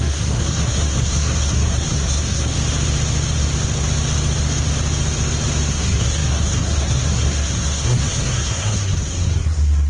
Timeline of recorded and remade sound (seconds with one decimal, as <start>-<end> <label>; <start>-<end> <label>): 0.0-2.5 remade; 2.5-5.7 recorded; 5.7-9.9 remade